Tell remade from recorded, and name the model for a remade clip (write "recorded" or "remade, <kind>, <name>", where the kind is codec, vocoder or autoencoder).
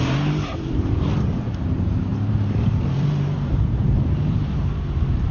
remade, vocoder, BigVGAN v2